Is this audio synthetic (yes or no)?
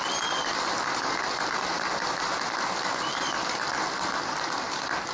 no